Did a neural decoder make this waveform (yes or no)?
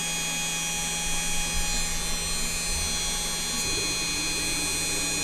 no